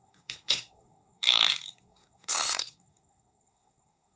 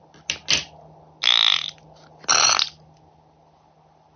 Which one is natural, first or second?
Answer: second